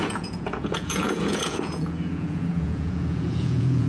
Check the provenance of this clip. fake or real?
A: fake